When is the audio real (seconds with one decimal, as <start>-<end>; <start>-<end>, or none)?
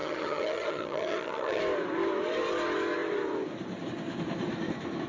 1.6-5.1